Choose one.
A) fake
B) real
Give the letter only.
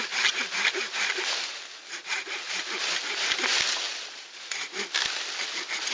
B